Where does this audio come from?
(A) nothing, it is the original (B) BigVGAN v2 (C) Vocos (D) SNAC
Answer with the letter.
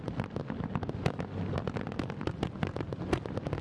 A